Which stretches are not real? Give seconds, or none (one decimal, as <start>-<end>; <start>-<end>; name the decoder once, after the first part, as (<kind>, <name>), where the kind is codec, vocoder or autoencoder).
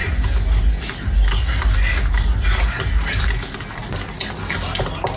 none